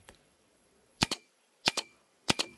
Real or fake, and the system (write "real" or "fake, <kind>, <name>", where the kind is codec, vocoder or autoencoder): fake, vocoder, Vocos